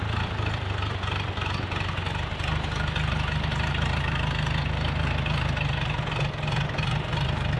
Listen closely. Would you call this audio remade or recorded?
recorded